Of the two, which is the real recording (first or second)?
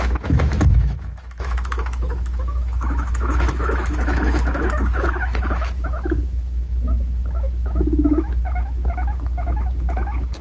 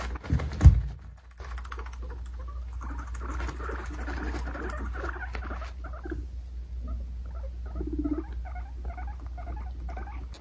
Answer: second